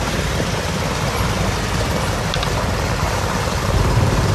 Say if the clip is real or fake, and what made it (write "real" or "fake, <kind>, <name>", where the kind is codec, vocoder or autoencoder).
fake, vocoder, BigVGAN v2